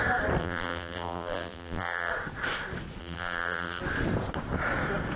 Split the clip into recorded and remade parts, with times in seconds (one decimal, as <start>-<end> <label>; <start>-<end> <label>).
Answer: 0.0-0.4 recorded; 0.4-2.1 remade; 2.1-3.0 recorded; 3.0-3.8 remade; 3.8-5.2 recorded